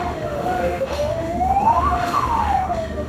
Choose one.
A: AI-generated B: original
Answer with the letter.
A